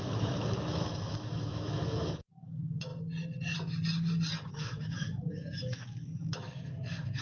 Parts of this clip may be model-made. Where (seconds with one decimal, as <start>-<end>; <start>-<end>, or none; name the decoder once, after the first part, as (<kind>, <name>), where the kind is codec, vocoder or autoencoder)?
0.0-2.9 (autoencoder, DAC-VAE); 4.5-7.2